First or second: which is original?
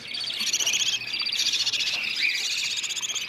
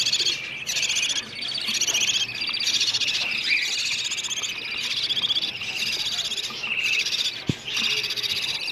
second